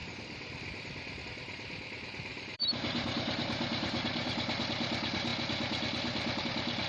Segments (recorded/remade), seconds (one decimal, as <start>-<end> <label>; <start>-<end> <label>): 0.0-2.3 recorded; 2.3-4.6 remade; 4.6-6.9 recorded